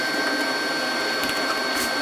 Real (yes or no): yes